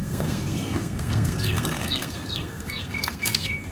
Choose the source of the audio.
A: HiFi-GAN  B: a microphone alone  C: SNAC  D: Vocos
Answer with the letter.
C